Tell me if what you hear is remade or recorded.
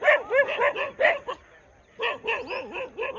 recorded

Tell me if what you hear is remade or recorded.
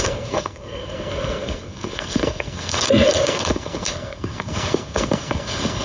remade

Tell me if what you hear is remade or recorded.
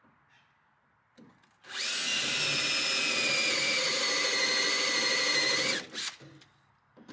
recorded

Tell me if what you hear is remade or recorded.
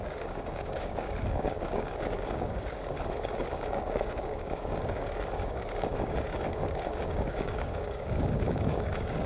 remade